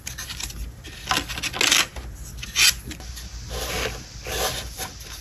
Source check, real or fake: real